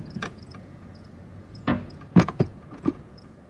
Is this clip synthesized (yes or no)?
yes